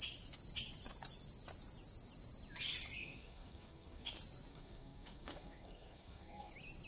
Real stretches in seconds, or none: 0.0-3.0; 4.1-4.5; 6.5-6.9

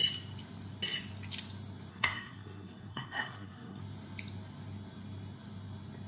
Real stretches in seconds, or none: 0.0-1.9; 3.8-6.1

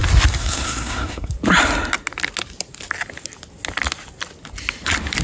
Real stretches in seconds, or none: 0.0-0.4; 1.3-5.2

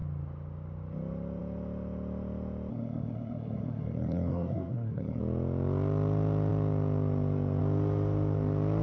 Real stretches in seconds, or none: 0.0-2.7; 5.2-8.8